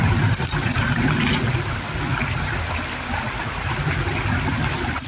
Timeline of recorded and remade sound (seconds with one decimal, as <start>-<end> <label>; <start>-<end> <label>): 0.0-5.1 recorded